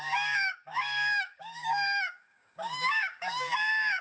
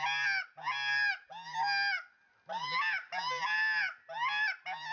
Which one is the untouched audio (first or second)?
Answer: second